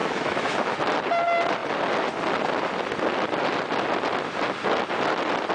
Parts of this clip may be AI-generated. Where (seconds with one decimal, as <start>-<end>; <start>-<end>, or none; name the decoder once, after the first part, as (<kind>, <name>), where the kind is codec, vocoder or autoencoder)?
0.0-0.8 (autoencoder, DAC-VAE)